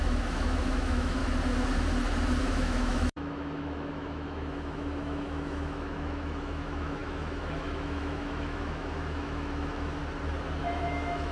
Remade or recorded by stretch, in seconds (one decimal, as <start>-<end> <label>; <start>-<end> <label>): 0.0-1.2 remade; 1.2-2.4 recorded; 2.4-10.0 remade; 10.0-10.6 recorded; 10.6-11.3 remade

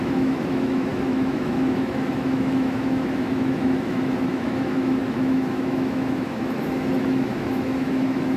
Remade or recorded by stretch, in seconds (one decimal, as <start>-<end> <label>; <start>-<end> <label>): 0.0-8.4 remade

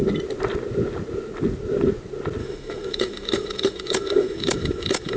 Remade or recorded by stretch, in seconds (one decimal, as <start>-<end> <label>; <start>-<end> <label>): 0.0-2.4 recorded; 2.4-5.2 remade

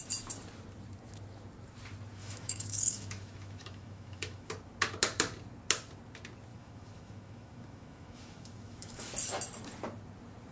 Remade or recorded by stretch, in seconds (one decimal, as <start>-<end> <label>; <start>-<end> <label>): 0.0-2.2 recorded; 2.2-4.5 remade; 4.5-6.5 recorded; 6.5-9.1 remade; 9.1-10.5 recorded

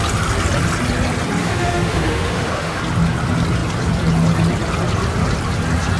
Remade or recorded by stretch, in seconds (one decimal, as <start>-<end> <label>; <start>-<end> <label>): 0.0-1.4 recorded; 1.4-2.8 remade; 2.8-6.0 recorded

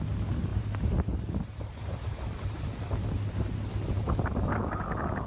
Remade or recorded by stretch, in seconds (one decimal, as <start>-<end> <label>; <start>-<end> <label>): 0.0-5.3 recorded

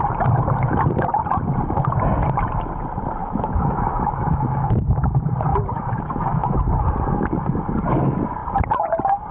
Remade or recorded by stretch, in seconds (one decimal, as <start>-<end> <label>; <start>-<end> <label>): 0.0-3.2 recorded; 3.2-5.1 remade; 5.1-5.5 recorded; 5.5-6.7 remade; 6.7-9.3 recorded

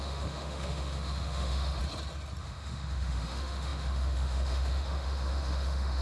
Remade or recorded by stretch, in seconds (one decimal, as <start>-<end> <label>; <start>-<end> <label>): 0.0-1.8 remade; 1.8-2.4 recorded; 2.4-6.0 remade